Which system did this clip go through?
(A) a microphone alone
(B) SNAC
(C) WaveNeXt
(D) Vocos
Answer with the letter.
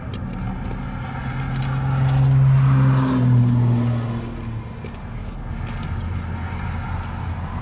A